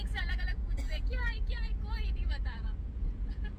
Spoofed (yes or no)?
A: yes